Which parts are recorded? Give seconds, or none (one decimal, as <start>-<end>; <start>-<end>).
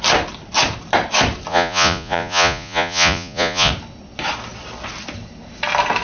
0.0-1.5; 3.7-6.0